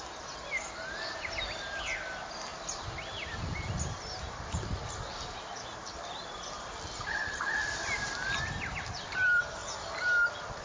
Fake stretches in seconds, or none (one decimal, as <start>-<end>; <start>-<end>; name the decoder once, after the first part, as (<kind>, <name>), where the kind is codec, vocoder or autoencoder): none